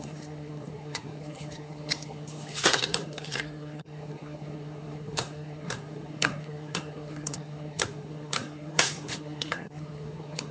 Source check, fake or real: fake